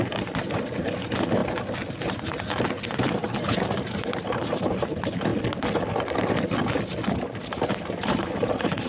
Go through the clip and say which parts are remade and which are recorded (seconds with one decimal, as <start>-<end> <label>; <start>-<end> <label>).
0.0-1.4 remade; 1.4-3.7 recorded; 3.7-5.3 remade; 5.3-7.2 recorded; 7.2-8.9 remade